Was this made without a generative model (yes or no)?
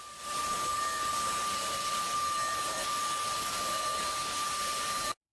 yes